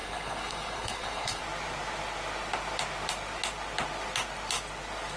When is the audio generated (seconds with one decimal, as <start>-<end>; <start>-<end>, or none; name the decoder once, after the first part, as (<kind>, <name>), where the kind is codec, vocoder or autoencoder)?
0.0-1.4 (codec, HILCodec)